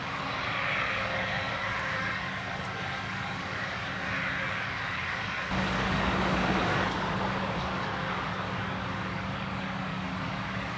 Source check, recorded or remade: remade